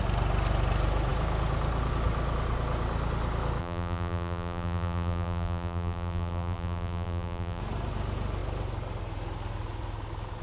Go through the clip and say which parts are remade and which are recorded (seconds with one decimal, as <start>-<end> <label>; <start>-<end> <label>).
0.0-3.6 recorded; 3.6-7.6 remade; 7.6-10.4 recorded